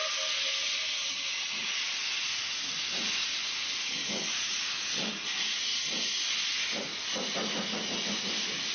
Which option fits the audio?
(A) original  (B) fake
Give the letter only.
A